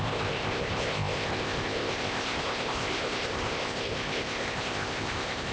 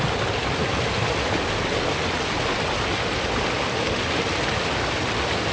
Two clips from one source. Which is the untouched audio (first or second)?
second